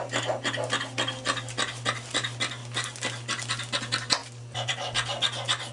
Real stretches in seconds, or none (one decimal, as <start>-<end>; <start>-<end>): 0.0-5.7